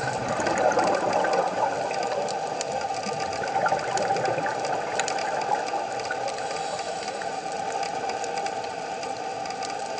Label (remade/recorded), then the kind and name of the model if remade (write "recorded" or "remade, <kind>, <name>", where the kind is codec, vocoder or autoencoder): recorded